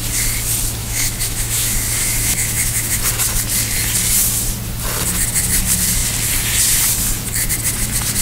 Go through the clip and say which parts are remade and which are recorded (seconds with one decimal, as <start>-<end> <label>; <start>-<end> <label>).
0.0-0.8 recorded; 0.8-1.6 remade; 1.6-2.0 recorded; 2.0-3.0 remade; 3.0-8.2 recorded